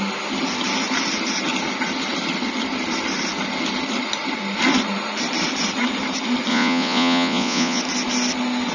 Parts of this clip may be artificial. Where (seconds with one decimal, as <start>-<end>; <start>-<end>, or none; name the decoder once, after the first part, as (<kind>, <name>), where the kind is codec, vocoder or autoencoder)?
6.5-7.8 (vocoder, Vocos)

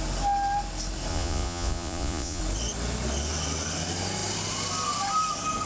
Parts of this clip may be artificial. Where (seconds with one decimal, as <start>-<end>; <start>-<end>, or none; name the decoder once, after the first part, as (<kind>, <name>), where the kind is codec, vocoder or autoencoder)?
1.1-2.4 (vocoder, Vocos)

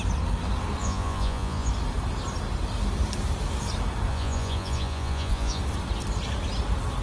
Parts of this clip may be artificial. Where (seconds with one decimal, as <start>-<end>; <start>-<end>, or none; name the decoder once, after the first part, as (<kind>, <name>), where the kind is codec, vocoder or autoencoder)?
0.8-1.7 (vocoder, Vocos); 4.1-5.6

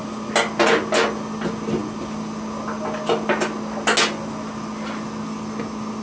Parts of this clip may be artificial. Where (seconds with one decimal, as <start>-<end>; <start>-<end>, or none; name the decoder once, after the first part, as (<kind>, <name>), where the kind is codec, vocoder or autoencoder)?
none

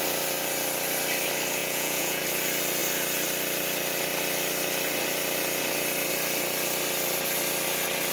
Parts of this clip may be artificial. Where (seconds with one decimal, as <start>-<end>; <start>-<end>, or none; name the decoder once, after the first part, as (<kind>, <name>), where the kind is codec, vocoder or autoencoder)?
1.6-2.2 (vocoder, Vocos)